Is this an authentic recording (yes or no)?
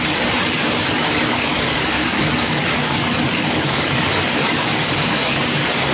no